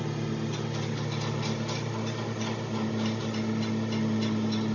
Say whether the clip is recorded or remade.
recorded